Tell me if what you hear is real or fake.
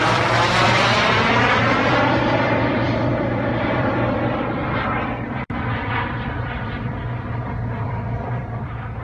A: fake